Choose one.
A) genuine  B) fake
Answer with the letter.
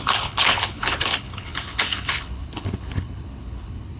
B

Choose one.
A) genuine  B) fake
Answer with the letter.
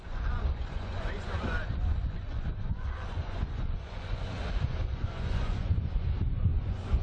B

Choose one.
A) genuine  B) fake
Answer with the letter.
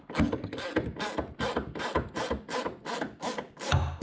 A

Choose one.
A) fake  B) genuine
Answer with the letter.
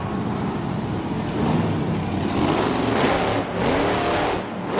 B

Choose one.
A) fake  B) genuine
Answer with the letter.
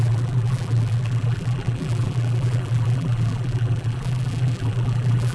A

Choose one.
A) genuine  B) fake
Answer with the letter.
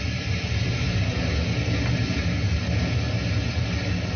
A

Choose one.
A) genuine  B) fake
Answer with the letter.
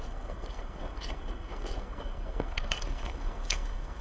B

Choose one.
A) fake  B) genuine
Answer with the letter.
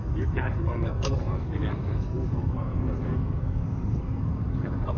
A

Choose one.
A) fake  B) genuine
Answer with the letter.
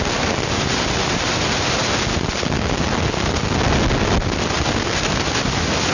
B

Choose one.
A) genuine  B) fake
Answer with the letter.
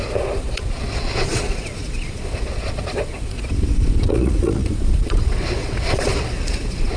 B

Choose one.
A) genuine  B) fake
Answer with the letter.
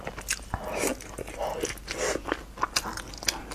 A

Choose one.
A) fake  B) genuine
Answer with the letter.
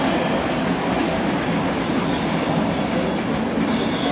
B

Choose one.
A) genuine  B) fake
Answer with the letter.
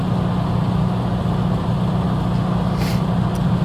A